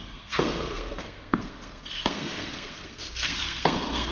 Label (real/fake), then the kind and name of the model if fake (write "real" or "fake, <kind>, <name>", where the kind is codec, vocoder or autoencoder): fake, codec, SNAC